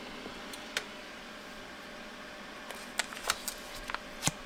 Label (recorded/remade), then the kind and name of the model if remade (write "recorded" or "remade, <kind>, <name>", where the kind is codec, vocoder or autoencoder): recorded